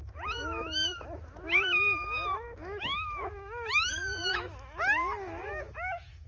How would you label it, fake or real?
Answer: fake